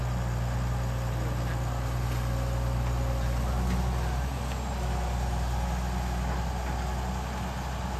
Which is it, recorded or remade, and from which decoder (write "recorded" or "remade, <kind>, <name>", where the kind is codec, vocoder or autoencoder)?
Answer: recorded